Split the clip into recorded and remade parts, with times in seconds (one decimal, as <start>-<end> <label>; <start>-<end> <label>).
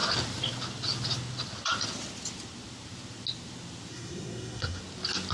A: 0.0-3.9 recorded; 3.9-4.8 remade; 4.8-5.3 recorded